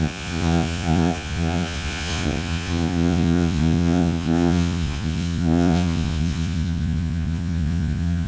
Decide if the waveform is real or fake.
fake